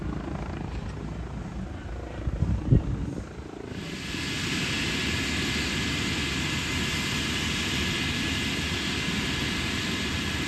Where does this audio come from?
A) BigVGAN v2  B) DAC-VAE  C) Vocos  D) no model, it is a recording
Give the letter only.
D